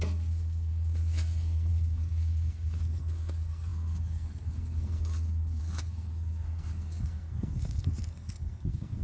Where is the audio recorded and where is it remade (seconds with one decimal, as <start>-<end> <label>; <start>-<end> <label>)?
0.0-9.0 remade